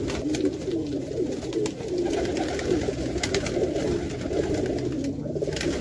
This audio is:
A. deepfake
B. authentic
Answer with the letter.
B